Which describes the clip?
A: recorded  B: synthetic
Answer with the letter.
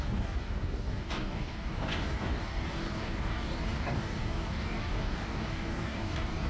B